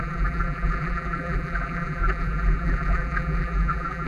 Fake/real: fake